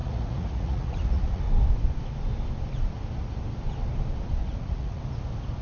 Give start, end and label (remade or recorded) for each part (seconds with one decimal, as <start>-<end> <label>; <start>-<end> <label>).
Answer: 0.0-1.5 remade; 1.5-4.4 recorded; 4.4-5.0 remade; 5.0-5.6 recorded